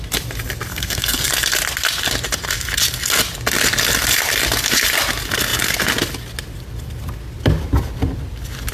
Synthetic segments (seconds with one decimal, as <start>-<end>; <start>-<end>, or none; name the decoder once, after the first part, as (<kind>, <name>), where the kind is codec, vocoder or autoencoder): 0.7-1.3 (codec, SNAC)